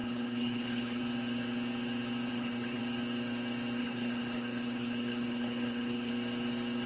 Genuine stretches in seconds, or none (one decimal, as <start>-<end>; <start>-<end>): 1.0-2.3; 2.8-3.8; 6.1-6.9